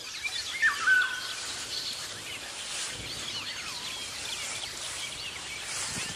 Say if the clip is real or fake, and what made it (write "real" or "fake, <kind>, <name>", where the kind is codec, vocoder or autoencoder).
real